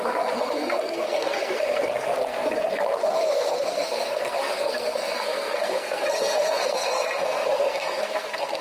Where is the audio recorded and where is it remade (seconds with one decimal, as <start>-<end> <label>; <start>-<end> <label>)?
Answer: 0.0-8.6 remade